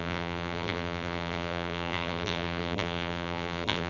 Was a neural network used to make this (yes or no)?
yes